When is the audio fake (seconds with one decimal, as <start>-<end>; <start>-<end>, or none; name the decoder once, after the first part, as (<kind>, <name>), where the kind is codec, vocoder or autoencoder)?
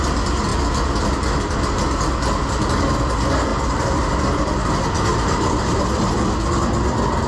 3.5-4.1 (vocoder, BigVGAN v2); 5.1-6.1